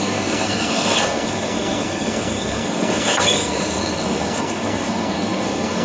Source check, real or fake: fake